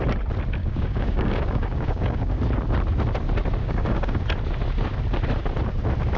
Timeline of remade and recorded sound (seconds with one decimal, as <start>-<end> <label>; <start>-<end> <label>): 0.0-0.6 recorded; 0.6-2.4 remade; 2.4-3.6 recorded; 3.6-4.2 remade; 4.2-6.2 recorded